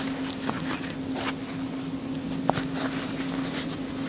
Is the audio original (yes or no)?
yes